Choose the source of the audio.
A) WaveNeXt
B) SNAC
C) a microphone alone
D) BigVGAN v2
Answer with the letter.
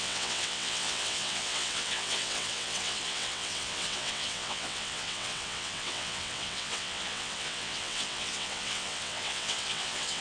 A